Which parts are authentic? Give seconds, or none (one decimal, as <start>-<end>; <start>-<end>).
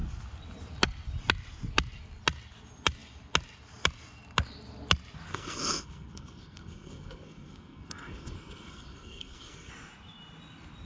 0.0-5.3; 9.7-10.9